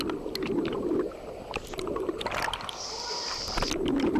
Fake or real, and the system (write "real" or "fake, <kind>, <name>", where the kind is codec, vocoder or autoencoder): real